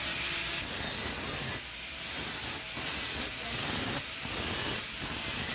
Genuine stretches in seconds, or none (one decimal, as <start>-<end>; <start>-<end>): 0.0-1.7; 5.0-5.5